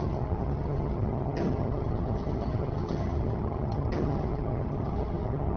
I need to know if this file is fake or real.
fake